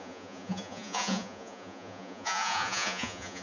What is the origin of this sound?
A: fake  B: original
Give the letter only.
A